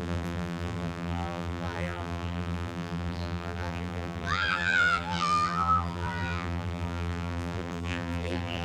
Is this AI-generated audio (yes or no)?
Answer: yes